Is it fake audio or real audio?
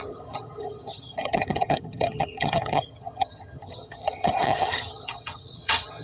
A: fake